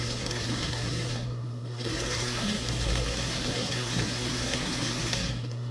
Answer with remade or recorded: remade